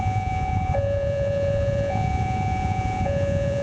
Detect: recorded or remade remade